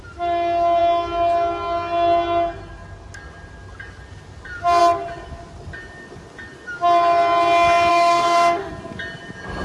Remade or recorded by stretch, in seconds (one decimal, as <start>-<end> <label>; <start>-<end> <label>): 0.0-7.9 recorded; 7.9-8.7 remade; 8.7-9.6 recorded